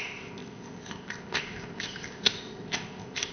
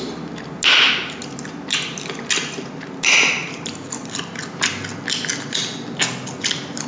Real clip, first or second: second